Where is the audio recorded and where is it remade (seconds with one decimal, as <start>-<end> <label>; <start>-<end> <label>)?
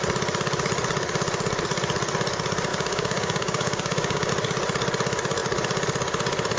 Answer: 0.0-2.7 recorded; 2.7-4.3 remade; 4.3-6.6 recorded